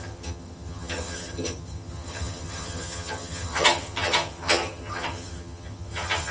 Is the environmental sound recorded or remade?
remade